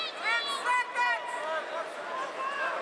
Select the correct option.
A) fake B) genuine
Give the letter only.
B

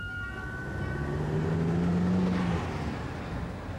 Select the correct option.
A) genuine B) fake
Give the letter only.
A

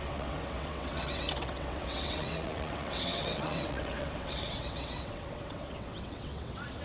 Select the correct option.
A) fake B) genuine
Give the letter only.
A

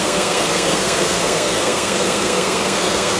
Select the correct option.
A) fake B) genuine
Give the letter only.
A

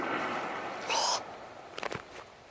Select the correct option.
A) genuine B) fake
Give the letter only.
A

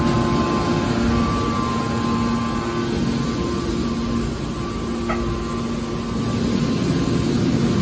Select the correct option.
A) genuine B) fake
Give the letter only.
A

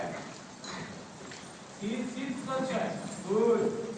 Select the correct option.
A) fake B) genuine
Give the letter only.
B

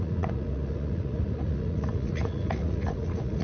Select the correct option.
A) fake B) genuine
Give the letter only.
A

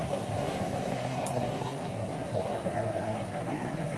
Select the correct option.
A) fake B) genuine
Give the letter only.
A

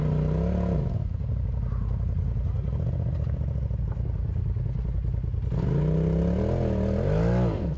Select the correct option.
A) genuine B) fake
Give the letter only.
A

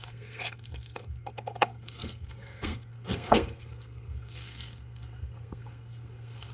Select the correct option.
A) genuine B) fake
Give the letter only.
B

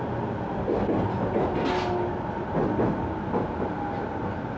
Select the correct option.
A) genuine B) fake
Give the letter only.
A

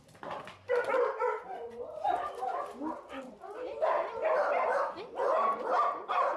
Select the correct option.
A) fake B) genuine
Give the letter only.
B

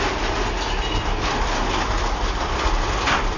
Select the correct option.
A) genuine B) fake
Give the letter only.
A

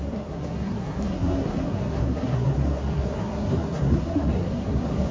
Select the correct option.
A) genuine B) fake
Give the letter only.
B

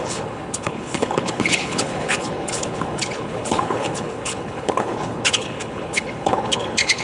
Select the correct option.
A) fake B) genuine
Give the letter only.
A